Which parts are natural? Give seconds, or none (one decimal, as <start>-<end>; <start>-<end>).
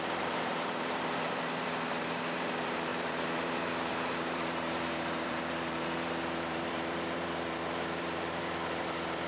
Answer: none